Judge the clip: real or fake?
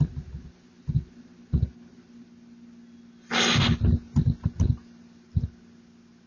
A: real